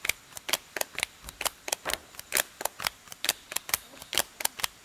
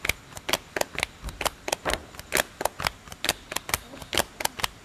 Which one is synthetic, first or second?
first